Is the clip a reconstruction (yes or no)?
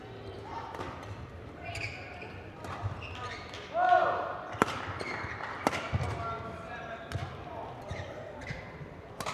no